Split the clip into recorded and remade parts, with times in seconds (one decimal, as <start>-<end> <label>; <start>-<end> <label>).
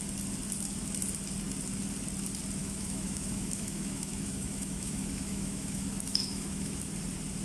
0.0-2.6 recorded; 2.6-6.7 remade; 6.7-7.4 recorded